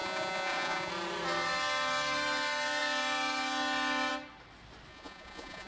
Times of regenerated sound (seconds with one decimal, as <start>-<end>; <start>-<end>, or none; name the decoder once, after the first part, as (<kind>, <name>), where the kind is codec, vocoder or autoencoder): 0.0-0.9 (vocoder, Vocos); 4.9-5.7